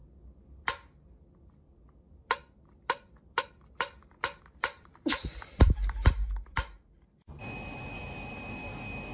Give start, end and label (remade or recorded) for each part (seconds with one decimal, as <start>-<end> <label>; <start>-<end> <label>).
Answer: 0.0-4.4 recorded; 4.4-9.1 remade